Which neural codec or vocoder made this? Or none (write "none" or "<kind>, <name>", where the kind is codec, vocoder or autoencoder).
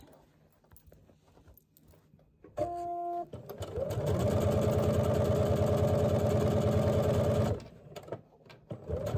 none